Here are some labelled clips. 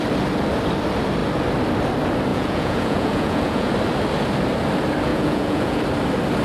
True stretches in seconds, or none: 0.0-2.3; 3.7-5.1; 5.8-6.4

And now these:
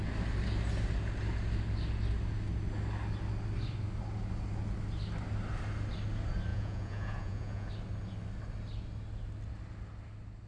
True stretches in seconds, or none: 0.0-6.5; 7.7-10.5

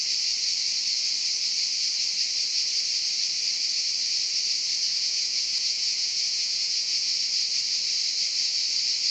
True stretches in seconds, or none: 0.0-4.9; 7.1-9.1